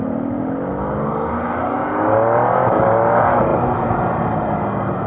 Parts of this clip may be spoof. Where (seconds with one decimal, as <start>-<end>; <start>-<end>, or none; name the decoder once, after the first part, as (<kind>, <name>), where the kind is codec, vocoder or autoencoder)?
none